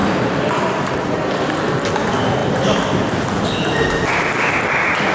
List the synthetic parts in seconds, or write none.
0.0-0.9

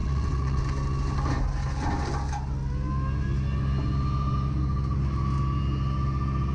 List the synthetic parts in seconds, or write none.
0.0-0.6

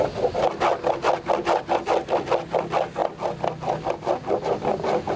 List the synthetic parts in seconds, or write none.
none

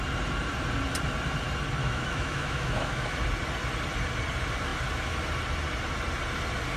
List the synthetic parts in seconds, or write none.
1.8-3.1

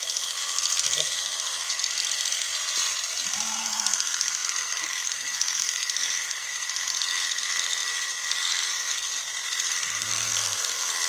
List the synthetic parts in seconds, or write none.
0.0-2.5; 3.6-9.1; 9.7-11.1

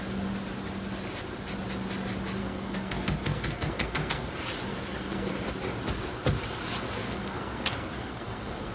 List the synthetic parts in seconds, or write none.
2.4-4.3; 4.7-5.3; 7.0-8.7

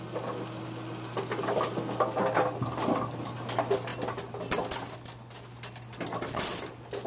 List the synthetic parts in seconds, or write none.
none

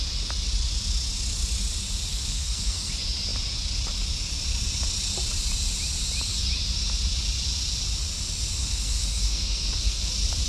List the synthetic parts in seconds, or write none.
2.1-2.9; 8.6-10.1